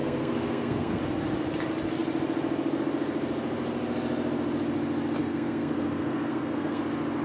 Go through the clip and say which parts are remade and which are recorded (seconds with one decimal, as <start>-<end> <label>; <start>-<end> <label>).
0.0-1.0 remade; 1.0-5.2 recorded; 5.2-6.8 remade; 6.8-7.2 recorded